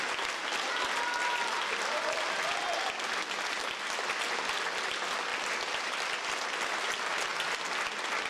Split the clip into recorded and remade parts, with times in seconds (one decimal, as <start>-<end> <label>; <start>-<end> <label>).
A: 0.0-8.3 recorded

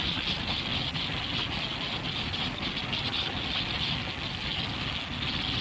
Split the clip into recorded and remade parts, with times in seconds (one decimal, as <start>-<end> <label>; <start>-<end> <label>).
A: 0.0-5.6 recorded

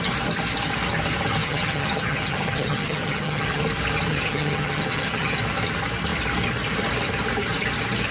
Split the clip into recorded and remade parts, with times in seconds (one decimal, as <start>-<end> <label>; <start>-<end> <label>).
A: 0.0-1.4 recorded; 1.4-3.6 remade; 3.6-4.1 recorded; 4.1-5.4 remade; 5.4-8.1 recorded